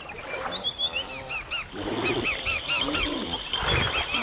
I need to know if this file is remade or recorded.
recorded